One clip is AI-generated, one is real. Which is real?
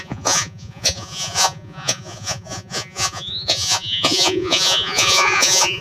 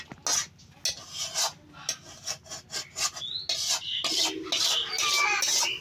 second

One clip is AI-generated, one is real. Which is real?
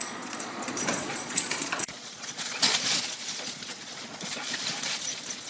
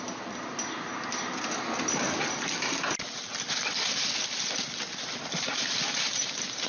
second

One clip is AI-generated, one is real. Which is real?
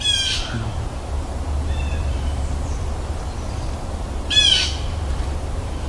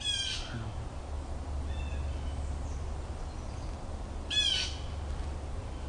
second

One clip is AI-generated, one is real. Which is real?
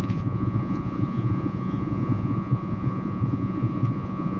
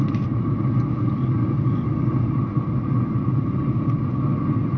second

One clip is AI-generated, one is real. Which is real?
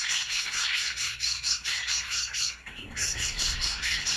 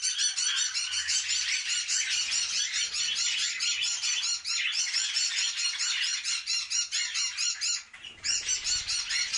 second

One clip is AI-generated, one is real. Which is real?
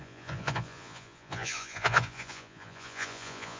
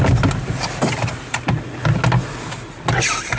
second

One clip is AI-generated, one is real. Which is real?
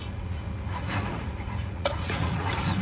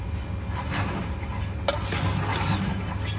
second